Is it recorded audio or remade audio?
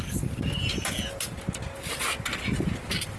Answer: recorded